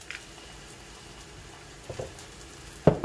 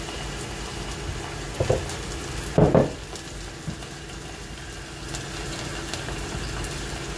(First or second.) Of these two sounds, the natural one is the second